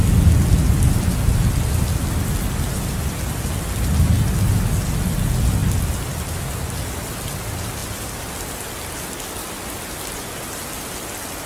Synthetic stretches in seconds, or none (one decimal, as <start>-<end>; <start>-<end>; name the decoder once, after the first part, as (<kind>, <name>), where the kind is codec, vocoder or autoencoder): none